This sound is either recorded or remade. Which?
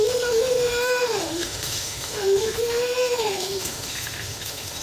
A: remade